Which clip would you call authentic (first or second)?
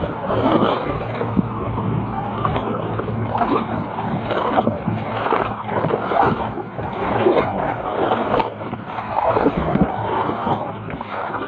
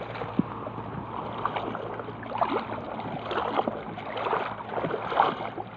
second